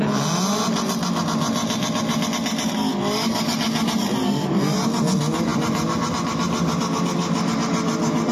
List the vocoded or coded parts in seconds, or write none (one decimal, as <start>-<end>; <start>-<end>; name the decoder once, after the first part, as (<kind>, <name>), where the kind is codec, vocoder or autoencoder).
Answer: none